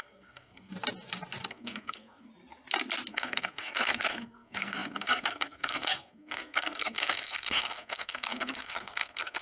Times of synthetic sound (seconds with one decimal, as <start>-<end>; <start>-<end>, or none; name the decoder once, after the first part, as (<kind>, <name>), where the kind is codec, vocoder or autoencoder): 0.0-0.7 (codec, SNAC); 1.5-2.3; 3.1-9.4